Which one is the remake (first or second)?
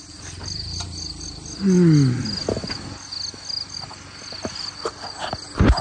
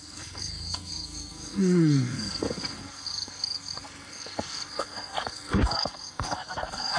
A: second